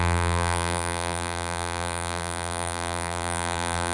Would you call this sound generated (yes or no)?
yes